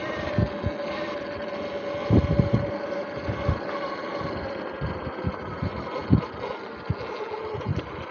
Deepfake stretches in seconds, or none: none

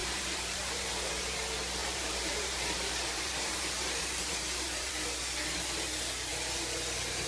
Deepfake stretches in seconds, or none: 0.0-1.1 (vocoder, BigVGAN v2); 1.8-4.9; 6.3-7.3

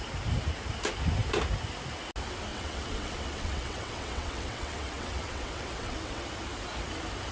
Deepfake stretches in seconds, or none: 2.5-6.3 (vocoder, WaveNeXt)

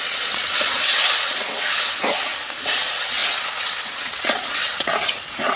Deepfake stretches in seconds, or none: 0.0-2.3 (vocoder, WaveNeXt); 2.8-5.6

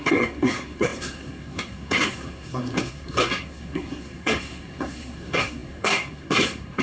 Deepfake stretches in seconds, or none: 0.0-6.8 (codec, SNAC)

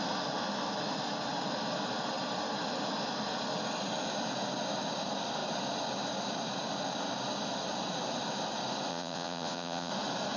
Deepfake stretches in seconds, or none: 8.9-9.9 (vocoder, Vocos)

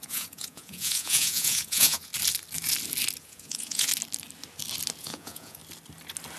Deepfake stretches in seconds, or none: 0.0-2.1 (vocoder, Vocos); 3.2-3.9; 5.0-5.6

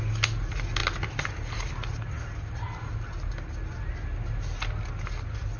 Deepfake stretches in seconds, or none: none